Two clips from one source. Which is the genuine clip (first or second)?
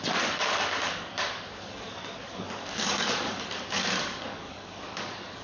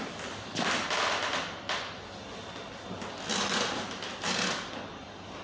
second